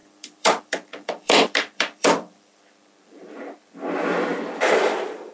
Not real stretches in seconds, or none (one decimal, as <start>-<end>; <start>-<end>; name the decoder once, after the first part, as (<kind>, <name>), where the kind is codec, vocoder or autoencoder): 0.0-2.6 (vocoder, BigVGAN v2); 4.3-5.3